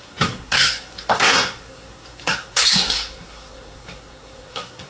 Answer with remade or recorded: remade